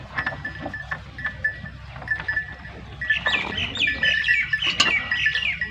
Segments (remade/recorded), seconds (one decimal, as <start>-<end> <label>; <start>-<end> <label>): 0.0-5.7 recorded